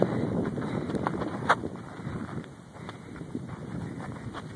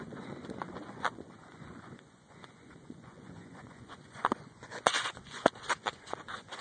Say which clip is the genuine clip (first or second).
first